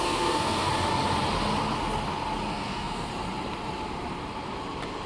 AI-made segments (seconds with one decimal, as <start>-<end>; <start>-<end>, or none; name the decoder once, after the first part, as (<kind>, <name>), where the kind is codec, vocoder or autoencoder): 0.0-0.7 (codec, SNAC); 2.5-3.1